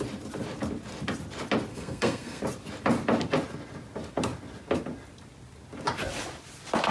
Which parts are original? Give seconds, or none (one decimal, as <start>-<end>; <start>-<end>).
0.0-1.7; 2.4-6.9